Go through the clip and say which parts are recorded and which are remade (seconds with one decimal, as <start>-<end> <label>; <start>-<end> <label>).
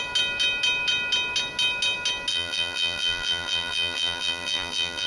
0.0-2.3 recorded; 2.3-5.1 remade